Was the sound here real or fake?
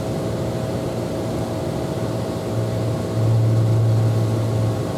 real